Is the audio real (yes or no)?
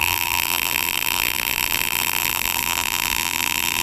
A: no